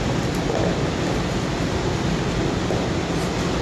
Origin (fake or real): real